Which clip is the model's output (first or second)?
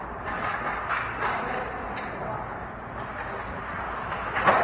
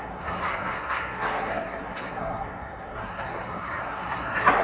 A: second